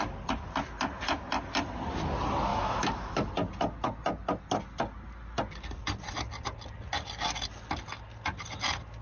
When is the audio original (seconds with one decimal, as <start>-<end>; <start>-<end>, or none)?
0.0-2.5; 3.3-9.0